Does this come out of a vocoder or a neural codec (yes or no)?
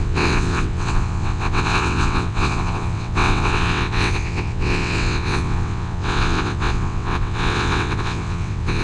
yes